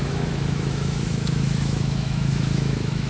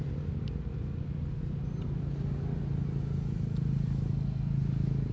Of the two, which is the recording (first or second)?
second